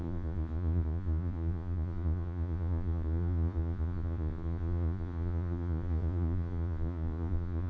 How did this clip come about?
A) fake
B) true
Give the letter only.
A